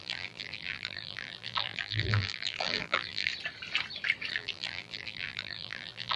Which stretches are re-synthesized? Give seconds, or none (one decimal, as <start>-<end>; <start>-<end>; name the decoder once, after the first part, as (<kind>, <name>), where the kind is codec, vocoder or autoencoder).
0.0-3.3 (vocoder, BigVGAN v2); 4.3-6.2